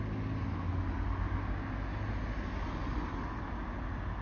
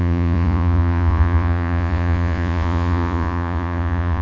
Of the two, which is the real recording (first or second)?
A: first